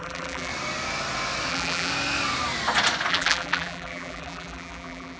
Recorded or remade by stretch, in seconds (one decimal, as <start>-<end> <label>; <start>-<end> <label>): 0.0-0.5 remade; 0.5-1.5 recorded; 1.5-1.9 remade; 1.9-3.1 recorded; 3.1-5.2 remade